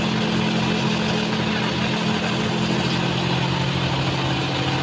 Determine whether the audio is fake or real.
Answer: real